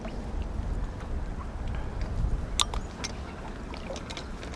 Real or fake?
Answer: real